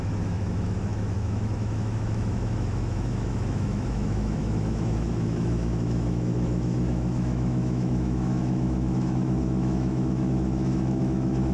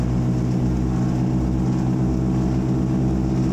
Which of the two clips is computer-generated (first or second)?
first